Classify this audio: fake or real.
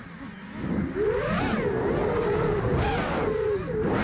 real